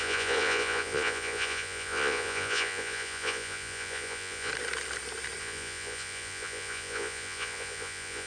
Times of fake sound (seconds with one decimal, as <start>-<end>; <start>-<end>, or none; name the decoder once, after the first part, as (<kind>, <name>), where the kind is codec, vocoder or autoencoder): 0.0-4.5 (vocoder, Vocos); 5.4-8.3